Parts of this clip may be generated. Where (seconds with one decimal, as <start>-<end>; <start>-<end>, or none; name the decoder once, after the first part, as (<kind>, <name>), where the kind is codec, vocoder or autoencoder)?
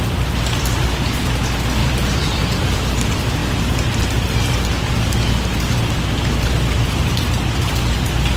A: 1.8-2.9 (vocoder, BigVGAN v2)